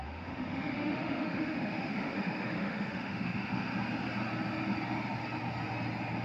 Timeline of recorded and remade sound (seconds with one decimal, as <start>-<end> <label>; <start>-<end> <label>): 0.0-3.7 remade; 3.7-6.2 recorded